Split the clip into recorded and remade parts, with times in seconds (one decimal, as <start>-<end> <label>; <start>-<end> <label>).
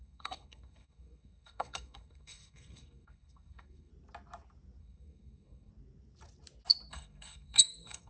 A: 0.0-3.9 remade; 3.9-4.8 recorded; 4.8-5.7 remade; 5.7-6.9 recorded; 6.9-8.1 remade